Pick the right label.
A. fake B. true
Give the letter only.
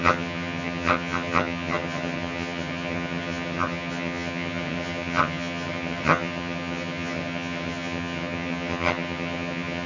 A